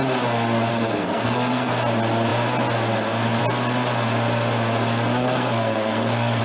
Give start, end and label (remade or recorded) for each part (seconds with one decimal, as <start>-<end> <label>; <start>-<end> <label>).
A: 0.0-0.7 recorded; 0.7-1.7 remade; 1.7-5.2 recorded; 5.2-6.4 remade